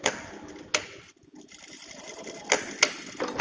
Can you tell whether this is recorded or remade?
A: recorded